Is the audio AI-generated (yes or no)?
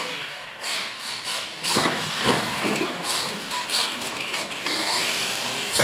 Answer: yes